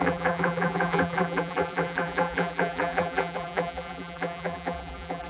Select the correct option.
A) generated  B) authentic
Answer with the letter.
A